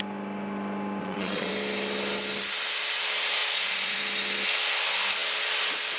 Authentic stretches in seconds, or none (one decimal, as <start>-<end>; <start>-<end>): 0.0-1.0; 1.5-3.4; 4.0-6.0